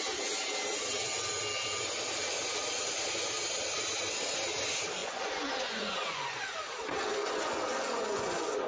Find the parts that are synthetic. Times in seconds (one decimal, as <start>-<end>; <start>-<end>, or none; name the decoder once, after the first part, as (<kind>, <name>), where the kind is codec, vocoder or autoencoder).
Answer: 5.0-6.5 (vocoder, Vocos); 7.1-8.7